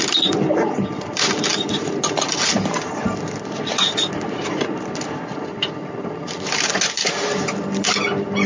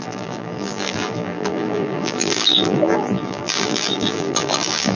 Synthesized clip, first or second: second